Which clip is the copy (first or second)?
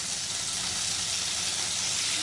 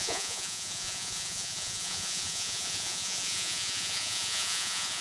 second